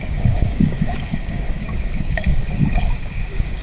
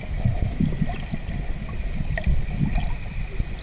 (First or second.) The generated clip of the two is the first